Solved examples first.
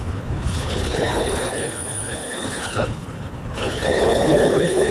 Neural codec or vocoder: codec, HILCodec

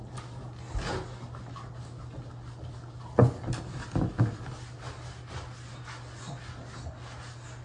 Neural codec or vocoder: none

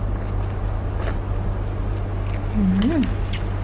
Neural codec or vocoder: none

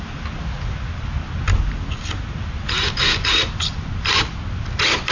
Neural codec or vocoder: none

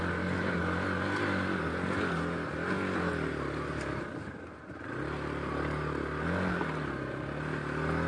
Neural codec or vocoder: none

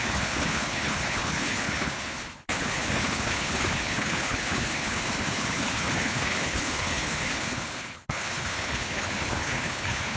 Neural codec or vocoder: codec, HILCodec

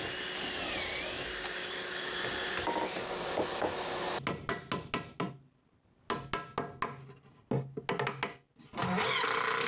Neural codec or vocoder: none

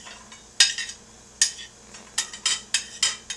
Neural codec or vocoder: none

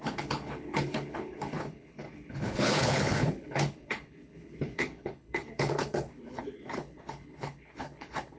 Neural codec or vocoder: codec, HILCodec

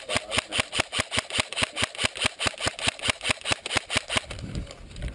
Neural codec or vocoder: none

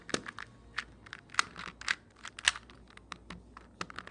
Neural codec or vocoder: none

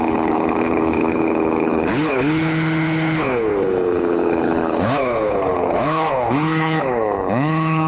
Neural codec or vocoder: codec, HILCodec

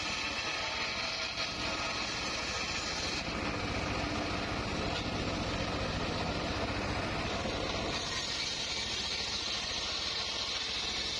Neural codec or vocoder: none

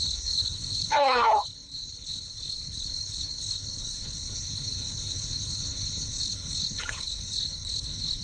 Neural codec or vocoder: codec, HILCodec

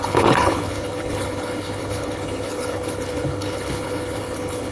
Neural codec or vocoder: codec, HILCodec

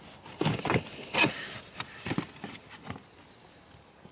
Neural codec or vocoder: none